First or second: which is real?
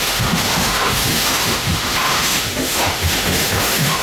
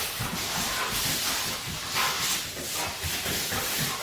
second